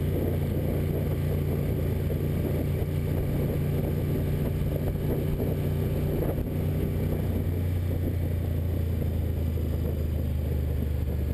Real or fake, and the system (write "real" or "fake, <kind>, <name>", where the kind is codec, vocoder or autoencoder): real